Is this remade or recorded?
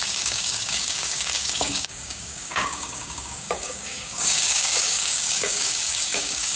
remade